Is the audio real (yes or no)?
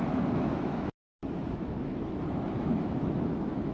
no